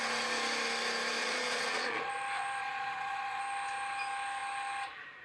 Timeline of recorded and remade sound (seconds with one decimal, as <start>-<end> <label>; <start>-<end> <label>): 0.0-1.2 recorded; 1.2-2.1 remade; 2.1-2.6 recorded; 2.6-3.4 remade; 3.4-5.2 recorded